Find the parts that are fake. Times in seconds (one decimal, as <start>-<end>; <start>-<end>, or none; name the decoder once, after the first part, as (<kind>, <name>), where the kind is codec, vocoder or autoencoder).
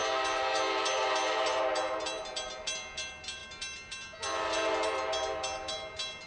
none